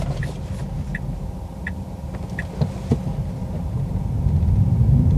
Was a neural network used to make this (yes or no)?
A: no